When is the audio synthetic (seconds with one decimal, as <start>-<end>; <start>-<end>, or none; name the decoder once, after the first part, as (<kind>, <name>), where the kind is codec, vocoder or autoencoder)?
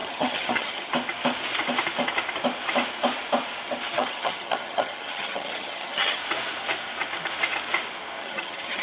0.0-0.9 (vocoder, HiFi-GAN); 3.9-6.2; 8.2-8.8